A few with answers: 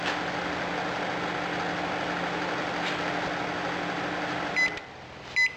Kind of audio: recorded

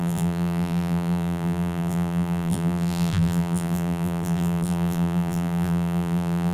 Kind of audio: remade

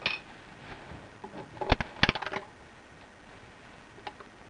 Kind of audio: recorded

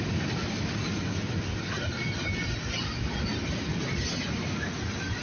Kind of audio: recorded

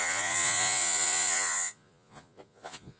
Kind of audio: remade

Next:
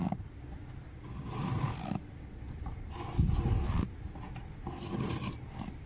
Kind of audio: recorded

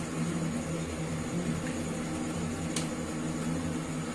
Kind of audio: recorded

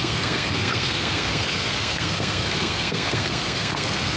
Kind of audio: remade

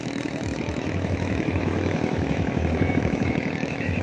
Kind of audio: remade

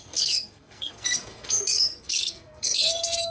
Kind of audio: remade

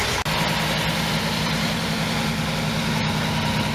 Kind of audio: recorded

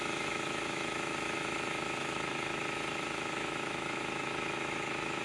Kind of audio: remade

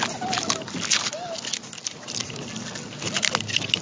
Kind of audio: recorded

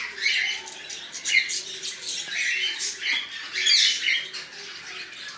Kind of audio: recorded